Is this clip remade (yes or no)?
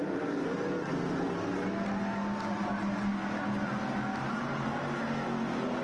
no